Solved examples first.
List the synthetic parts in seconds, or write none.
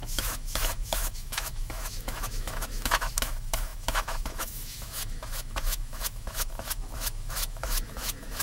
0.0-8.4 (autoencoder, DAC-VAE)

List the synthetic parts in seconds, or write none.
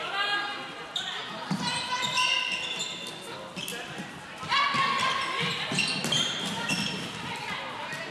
none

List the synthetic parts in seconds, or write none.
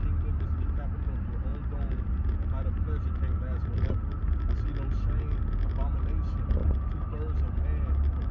none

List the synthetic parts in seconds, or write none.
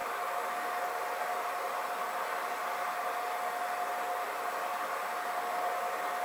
none